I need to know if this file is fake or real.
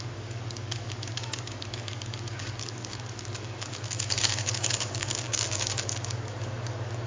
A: fake